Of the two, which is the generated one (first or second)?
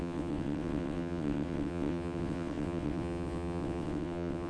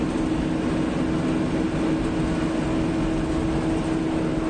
first